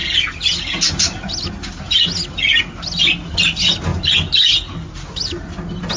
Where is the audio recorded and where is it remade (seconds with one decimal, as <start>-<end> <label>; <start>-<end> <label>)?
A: 0.0-6.0 recorded